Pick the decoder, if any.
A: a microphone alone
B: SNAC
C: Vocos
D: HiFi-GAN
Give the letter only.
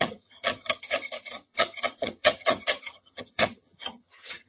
D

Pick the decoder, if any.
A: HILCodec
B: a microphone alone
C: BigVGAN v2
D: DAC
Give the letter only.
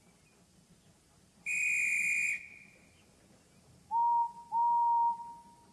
B